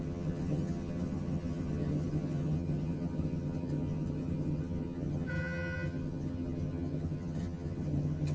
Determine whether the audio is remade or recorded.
remade